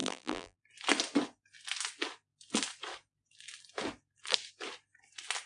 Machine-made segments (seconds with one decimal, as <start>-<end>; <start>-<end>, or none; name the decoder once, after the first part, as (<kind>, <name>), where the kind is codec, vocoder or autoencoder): 0.0-0.6 (vocoder, BigVGAN v2)